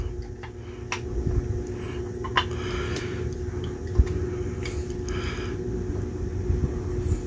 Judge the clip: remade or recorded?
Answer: recorded